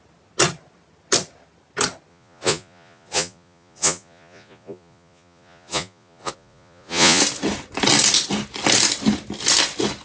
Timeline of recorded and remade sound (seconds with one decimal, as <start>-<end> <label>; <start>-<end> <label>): 0.0-2.1 recorded; 2.1-7.2 remade; 7.2-10.0 recorded